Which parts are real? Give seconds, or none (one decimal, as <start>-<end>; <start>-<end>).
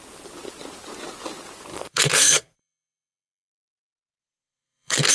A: 0.0-1.7